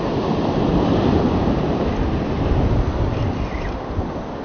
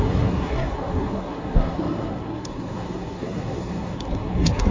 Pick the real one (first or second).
first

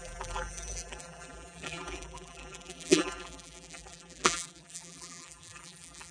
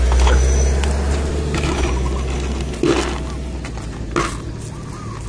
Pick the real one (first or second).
second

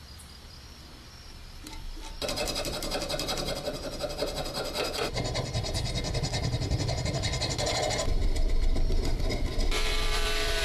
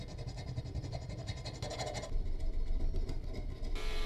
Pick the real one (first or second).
second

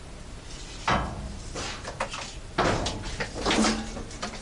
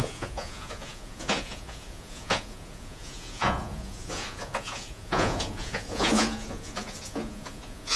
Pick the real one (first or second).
first